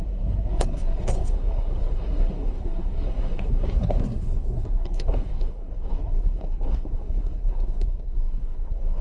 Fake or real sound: fake